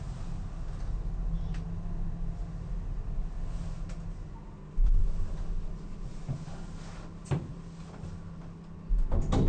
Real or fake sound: real